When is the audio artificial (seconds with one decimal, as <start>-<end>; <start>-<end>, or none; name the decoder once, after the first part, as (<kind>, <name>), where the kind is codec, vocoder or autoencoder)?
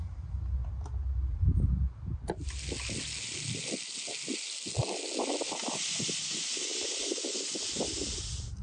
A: none